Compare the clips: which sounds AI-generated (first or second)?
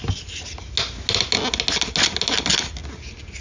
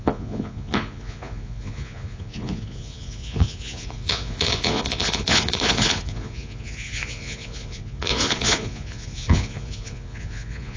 second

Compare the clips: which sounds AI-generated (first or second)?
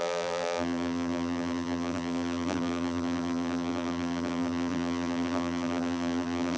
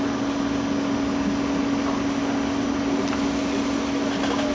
first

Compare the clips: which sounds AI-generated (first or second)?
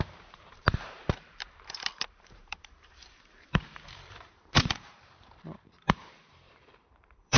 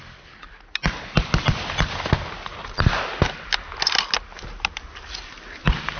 first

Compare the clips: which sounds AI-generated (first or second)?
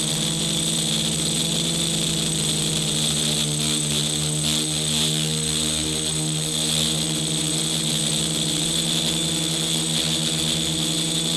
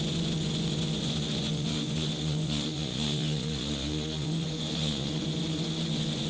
second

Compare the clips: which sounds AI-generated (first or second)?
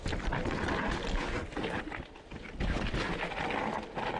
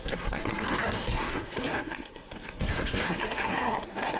second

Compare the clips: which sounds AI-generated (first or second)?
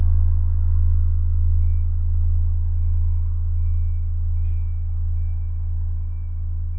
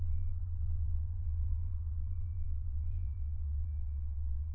second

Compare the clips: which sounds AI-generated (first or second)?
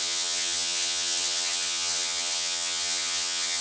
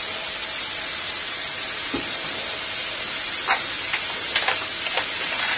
first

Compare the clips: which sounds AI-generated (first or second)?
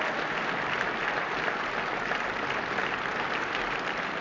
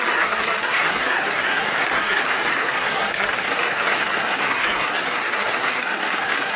second